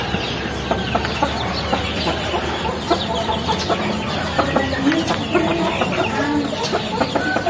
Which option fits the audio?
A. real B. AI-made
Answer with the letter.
A